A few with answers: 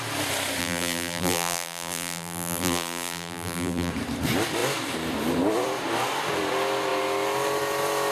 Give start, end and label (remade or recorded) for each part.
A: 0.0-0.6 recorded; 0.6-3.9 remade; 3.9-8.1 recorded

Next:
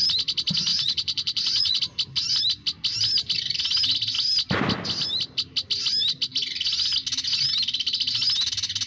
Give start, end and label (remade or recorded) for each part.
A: 0.0-0.7 recorded; 0.7-1.8 remade; 1.8-8.9 recorded

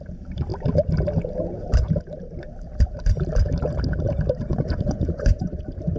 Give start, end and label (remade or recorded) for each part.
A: 0.0-4.5 recorded; 4.5-5.6 remade; 5.6-6.0 recorded

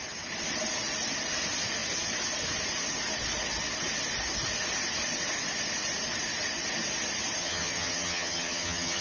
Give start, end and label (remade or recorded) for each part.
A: 0.0-7.4 recorded; 7.4-9.0 remade